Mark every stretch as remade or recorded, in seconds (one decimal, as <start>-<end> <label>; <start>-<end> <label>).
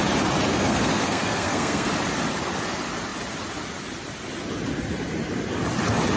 0.0-0.5 recorded; 0.5-1.9 remade; 1.9-6.2 recorded